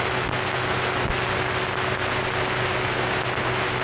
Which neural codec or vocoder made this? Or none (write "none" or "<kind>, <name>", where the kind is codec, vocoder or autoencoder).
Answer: none